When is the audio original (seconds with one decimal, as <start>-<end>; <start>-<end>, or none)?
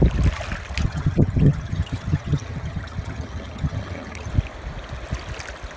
0.0-0.8; 4.3-5.8